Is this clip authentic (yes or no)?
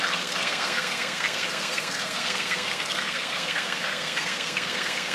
no